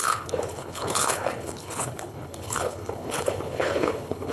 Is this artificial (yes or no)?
yes